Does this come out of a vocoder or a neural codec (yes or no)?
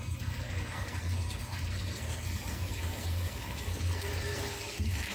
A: yes